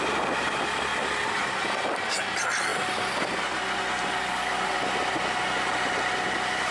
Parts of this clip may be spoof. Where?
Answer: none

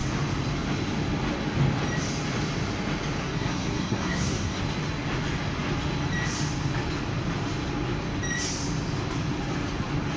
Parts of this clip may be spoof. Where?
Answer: 3.2-4.6 (codec, SNAC)